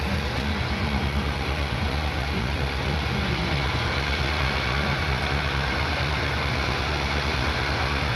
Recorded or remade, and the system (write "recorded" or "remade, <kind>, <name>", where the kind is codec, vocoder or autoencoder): remade, vocoder, Vocos